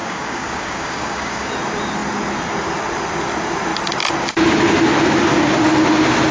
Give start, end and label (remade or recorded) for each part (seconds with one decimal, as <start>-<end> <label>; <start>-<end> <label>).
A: 0.0-1.5 remade; 1.5-6.3 recorded